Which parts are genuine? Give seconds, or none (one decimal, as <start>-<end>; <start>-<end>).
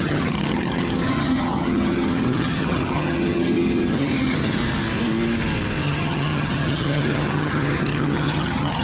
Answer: 4.6-5.8